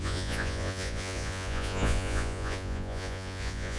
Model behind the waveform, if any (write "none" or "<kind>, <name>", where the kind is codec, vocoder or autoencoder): vocoder, Vocos